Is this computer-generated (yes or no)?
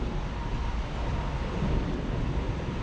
yes